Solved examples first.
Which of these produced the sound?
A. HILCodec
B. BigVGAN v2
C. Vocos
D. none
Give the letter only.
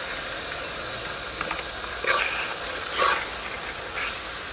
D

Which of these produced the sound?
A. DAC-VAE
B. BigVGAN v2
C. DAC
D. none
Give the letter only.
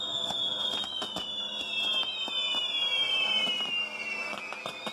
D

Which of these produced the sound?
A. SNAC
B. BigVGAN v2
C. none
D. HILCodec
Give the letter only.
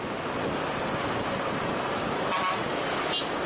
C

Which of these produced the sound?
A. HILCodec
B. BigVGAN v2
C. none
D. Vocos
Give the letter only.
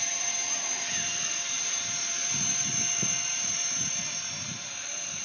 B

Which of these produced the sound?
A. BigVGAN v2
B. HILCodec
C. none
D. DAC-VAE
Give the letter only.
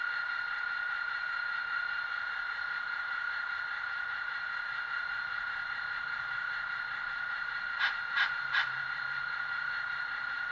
A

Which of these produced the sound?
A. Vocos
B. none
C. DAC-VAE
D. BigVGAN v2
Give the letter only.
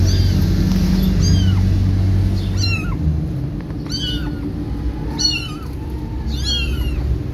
B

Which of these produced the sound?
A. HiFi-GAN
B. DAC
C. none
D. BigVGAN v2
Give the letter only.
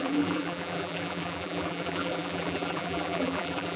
D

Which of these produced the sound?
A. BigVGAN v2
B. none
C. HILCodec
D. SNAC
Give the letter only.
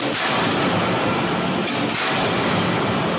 B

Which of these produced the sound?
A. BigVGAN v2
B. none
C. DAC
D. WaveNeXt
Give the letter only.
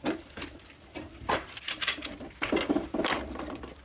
A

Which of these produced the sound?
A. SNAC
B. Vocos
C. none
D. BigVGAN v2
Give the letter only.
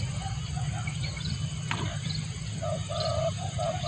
D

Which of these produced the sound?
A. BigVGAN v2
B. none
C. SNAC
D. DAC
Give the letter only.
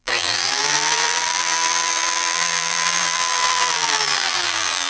A